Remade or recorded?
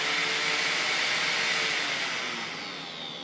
recorded